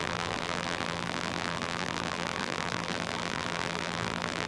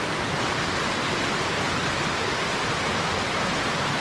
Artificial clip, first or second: first